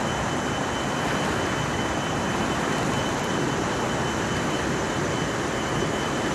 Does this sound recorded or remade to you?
recorded